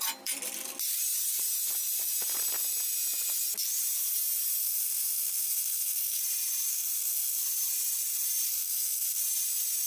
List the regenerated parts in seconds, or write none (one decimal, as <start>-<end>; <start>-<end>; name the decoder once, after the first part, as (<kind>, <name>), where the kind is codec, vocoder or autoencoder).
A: 4.6-6.2 (codec, SNAC); 6.7-7.4; 8.5-9.2